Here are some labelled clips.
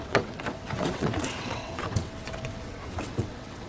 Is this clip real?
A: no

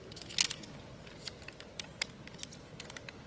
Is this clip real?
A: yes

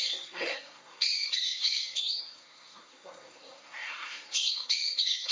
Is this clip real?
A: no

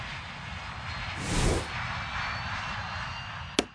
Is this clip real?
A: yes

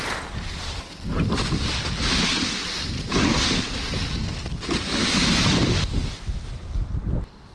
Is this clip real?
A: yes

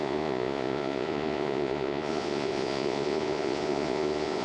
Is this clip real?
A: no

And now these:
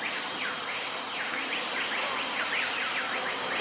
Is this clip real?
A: yes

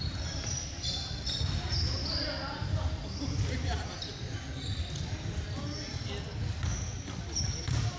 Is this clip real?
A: yes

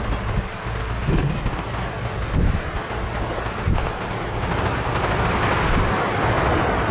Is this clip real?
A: yes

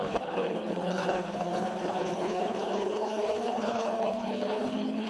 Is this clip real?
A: no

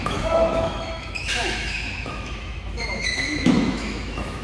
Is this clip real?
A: no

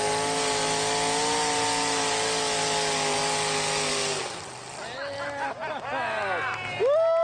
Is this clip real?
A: yes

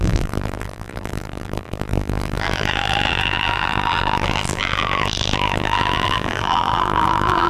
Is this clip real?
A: no